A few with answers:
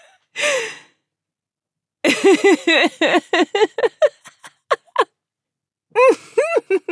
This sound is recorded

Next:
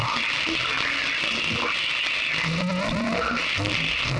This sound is recorded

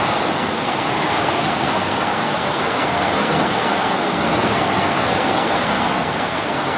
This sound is remade